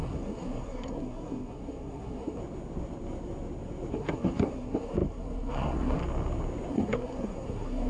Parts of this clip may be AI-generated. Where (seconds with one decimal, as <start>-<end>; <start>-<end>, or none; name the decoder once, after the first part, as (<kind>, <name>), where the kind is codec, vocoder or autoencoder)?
0.0-2.4 (codec, SNAC); 3.9-6.0; 6.7-7.9